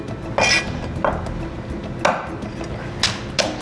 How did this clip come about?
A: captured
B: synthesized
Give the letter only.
A